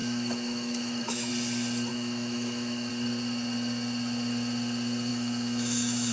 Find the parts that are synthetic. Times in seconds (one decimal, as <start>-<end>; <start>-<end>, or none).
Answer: 0.0-1.3; 1.9-2.9; 5.1-6.1